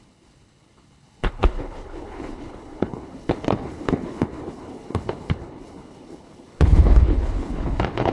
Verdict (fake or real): fake